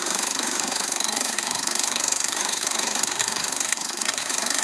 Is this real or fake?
fake